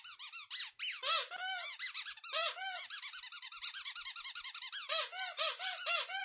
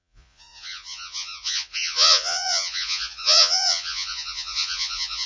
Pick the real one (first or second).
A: first